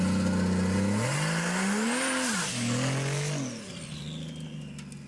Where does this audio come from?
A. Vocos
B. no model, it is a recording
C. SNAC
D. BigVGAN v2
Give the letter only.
B